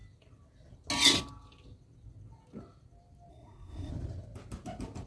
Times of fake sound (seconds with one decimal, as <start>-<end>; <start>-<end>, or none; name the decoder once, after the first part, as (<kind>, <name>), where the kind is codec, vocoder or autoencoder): 3.3-3.9 (codec, SNAC)